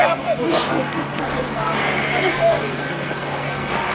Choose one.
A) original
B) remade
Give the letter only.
B